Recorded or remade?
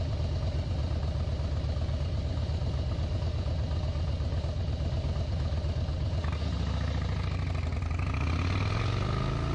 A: recorded